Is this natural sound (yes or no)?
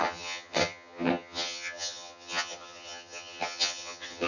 no